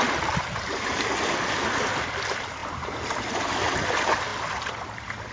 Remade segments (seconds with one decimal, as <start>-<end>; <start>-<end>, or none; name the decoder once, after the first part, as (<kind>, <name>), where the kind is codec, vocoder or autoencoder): none